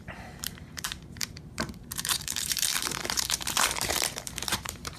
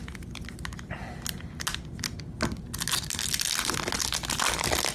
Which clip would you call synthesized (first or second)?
first